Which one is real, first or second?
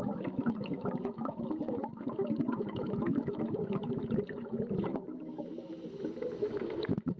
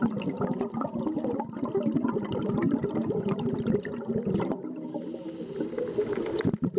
second